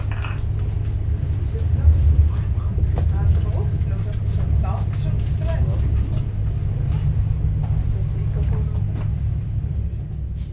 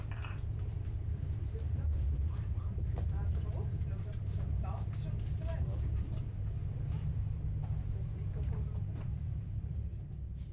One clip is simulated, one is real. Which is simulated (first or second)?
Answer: second